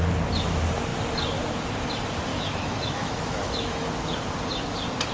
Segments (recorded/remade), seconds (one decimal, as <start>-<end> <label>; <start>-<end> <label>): 0.0-2.3 recorded; 2.3-3.9 remade; 3.9-5.1 recorded